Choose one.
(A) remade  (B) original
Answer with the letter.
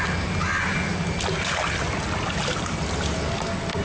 B